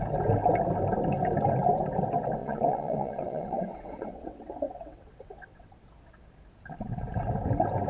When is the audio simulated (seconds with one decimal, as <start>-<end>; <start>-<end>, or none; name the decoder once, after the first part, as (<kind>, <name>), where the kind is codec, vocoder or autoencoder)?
2.4-5.9 (vocoder, WaveNeXt)

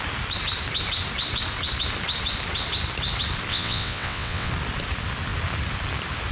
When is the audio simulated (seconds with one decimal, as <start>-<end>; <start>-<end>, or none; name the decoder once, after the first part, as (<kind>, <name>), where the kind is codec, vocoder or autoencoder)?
3.5-4.5 (vocoder, WaveNeXt)

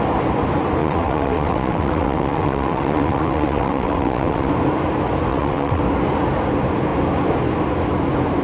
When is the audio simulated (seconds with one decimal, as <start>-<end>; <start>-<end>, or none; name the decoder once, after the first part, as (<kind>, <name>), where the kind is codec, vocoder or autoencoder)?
0.8-4.5 (vocoder, WaveNeXt); 5.3-5.8

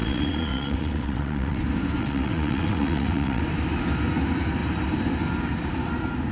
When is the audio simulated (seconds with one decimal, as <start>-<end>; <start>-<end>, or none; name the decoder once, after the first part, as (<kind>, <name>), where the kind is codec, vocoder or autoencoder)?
0.0-1.6 (vocoder, WaveNeXt); 2.0-3.4

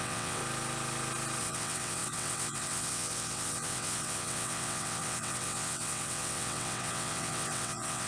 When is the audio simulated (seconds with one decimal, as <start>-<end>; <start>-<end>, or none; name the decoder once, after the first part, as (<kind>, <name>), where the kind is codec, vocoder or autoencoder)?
0.0-0.4 (vocoder, WaveNeXt); 1.4-8.1

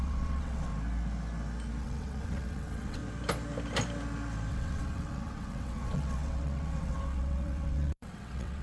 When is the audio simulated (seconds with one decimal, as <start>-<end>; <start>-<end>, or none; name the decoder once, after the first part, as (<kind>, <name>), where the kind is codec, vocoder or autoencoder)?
0.0-0.7 (vocoder, WaveNeXt); 1.8-3.0; 4.5-8.6

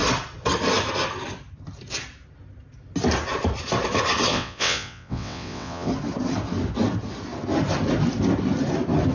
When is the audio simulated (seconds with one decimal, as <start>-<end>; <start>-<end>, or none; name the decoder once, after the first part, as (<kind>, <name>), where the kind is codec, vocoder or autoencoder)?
4.3-5.9 (vocoder, WaveNeXt)

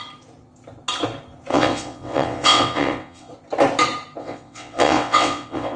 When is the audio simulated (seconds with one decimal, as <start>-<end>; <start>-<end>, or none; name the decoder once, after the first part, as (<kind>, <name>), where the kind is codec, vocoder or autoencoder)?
1.5-3.3 (vocoder, WaveNeXt); 4.2-5.8